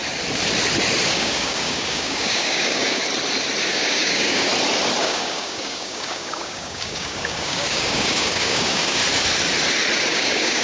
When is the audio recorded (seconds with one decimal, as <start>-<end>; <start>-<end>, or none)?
0.0-1.1; 3.0-3.7; 4.5-5.0; 9.0-10.1